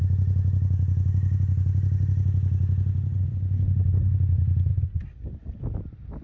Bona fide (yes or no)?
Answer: yes